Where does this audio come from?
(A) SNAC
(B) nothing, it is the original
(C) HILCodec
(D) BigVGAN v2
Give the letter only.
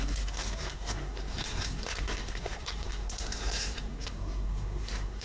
A